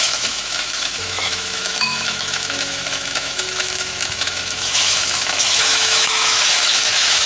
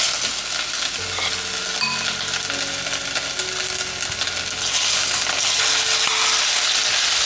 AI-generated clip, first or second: first